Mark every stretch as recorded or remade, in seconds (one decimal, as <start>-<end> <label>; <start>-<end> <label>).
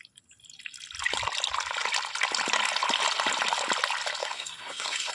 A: 0.0-4.2 recorded; 4.2-5.1 remade